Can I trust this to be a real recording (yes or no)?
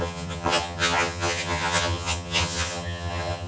no